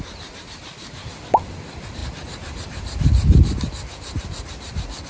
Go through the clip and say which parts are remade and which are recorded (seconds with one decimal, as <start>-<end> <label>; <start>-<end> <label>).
0.0-5.1 recorded